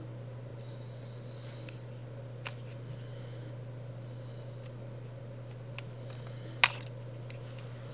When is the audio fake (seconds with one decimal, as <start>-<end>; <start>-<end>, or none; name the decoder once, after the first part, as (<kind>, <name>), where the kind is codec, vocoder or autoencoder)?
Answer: none